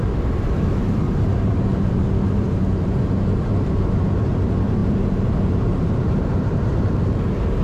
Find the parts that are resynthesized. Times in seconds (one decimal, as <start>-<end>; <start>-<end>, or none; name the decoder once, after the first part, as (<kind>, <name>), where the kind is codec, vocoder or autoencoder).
0.0-7.6 (vocoder, BigVGAN v2)